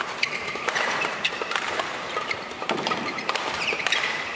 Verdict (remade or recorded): remade